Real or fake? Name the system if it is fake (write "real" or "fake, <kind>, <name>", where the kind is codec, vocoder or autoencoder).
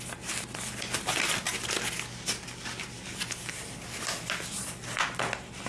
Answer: real